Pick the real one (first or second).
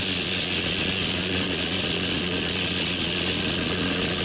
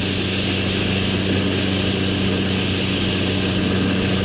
second